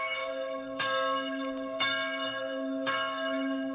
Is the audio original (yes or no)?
no